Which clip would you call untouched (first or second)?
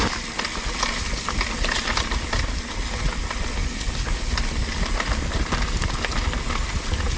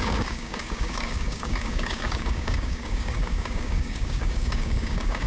first